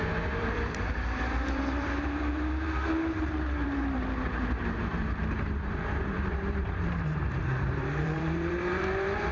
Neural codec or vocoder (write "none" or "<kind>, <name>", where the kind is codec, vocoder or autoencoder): vocoder, BigVGAN v2